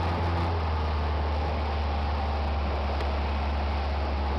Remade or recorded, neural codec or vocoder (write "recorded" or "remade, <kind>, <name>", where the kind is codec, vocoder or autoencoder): recorded